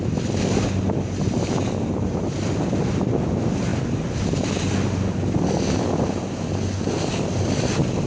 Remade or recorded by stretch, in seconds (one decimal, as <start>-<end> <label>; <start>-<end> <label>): 0.0-8.1 recorded